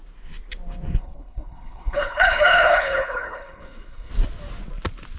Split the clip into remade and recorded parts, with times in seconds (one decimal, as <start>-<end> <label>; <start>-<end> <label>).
0.0-1.0 recorded; 1.0-4.1 remade; 4.1-5.2 recorded